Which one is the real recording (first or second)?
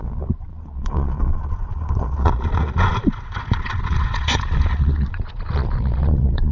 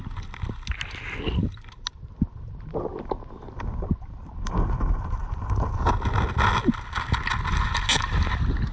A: second